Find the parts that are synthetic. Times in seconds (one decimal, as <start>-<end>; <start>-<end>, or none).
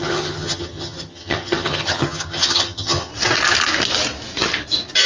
0.0-3.1